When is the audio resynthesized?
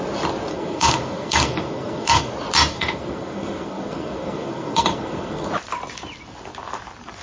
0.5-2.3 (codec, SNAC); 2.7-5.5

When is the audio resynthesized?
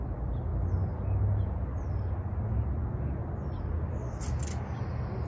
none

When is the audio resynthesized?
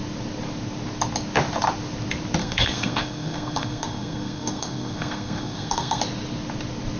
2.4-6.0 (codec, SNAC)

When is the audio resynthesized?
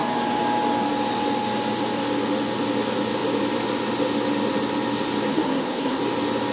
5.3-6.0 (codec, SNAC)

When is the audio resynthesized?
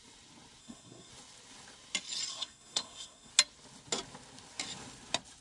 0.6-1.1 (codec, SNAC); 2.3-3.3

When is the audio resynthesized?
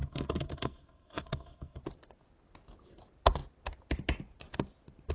0.0-1.8 (codec, SNAC)